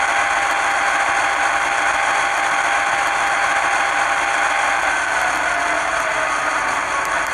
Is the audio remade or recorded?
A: recorded